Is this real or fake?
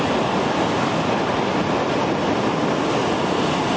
real